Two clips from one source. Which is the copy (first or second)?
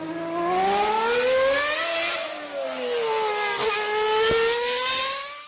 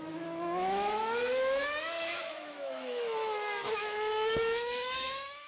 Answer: second